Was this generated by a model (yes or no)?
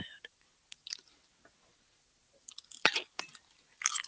no